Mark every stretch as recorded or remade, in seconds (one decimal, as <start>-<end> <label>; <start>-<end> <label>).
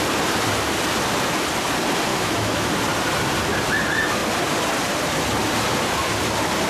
0.0-2.1 recorded; 2.1-2.7 remade; 2.7-6.7 recorded